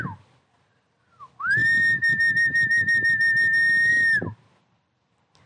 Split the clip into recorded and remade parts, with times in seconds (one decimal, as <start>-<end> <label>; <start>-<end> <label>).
0.0-5.5 recorded